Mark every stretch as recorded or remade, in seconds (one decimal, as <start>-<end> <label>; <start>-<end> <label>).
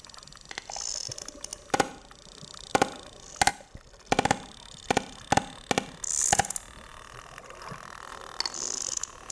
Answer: 0.0-9.3 recorded